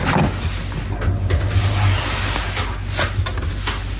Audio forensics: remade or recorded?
recorded